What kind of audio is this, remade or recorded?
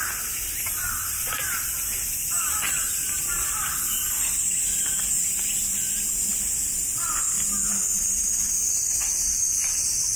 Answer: recorded